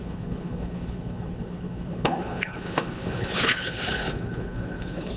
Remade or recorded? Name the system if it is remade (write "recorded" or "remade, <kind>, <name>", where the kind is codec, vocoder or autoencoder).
remade, codec, HILCodec